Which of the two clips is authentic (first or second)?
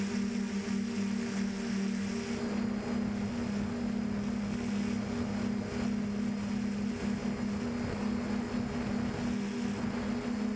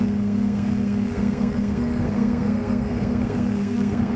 first